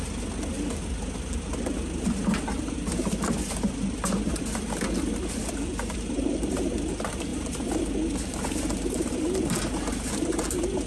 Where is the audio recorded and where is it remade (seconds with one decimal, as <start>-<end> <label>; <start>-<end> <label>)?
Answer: 0.0-10.9 recorded